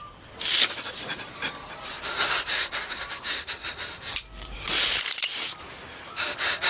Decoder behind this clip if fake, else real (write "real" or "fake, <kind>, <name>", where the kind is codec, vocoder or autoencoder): fake, vocoder, BigVGAN v2